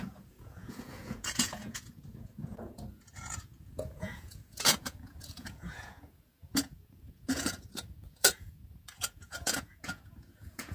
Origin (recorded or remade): remade